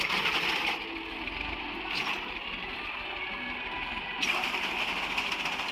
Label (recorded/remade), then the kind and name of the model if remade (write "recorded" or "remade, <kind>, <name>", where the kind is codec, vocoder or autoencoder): recorded